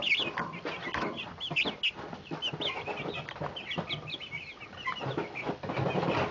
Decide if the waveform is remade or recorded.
recorded